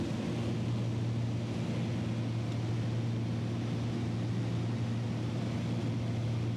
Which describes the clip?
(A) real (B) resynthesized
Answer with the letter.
A